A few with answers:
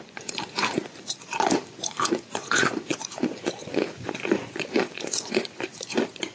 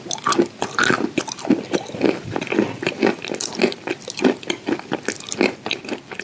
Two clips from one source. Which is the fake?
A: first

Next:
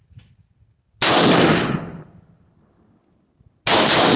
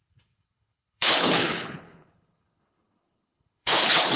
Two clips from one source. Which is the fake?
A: second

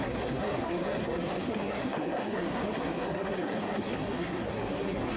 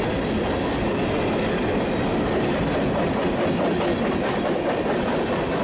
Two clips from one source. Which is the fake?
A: first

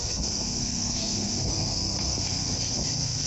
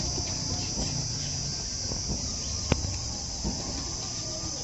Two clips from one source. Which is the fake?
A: first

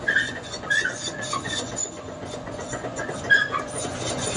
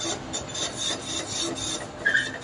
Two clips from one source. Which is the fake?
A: first